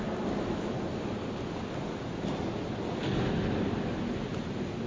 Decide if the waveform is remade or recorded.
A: recorded